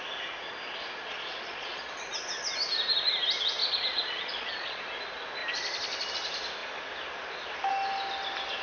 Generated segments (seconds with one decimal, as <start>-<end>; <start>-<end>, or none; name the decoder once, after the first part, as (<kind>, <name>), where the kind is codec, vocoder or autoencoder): 1.0-1.9 (vocoder, Vocos); 3.6-4.8